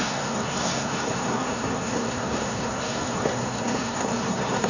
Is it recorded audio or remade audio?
remade